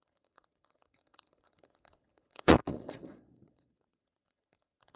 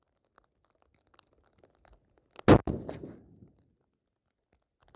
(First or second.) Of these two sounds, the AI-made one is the first